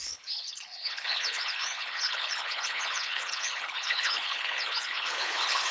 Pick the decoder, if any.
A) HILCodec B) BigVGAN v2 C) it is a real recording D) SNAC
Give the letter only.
A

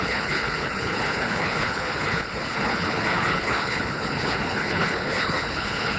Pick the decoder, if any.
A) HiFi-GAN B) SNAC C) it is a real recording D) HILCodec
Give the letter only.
D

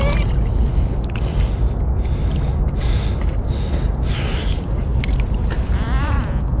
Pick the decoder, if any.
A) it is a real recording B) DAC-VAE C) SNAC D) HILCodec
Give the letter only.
A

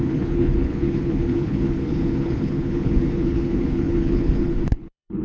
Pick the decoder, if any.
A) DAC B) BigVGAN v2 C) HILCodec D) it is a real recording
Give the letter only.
C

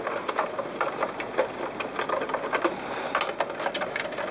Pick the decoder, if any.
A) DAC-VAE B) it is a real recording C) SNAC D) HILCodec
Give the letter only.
B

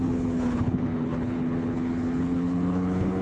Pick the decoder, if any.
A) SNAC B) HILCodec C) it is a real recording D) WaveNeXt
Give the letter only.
B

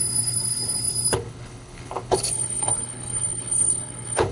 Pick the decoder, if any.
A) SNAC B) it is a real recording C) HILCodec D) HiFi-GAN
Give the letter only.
C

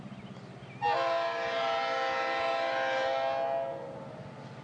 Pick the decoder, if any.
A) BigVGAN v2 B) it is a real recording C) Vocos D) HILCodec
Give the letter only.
B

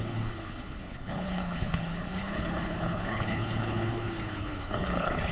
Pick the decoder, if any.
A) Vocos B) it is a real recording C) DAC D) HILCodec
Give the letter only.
D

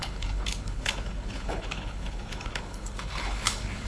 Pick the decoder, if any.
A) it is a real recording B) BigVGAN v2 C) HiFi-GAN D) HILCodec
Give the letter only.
D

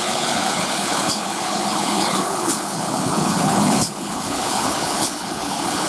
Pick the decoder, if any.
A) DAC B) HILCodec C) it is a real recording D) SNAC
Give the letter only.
B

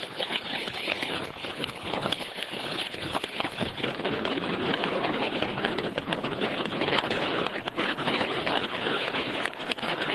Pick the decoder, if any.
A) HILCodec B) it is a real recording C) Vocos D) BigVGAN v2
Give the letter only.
A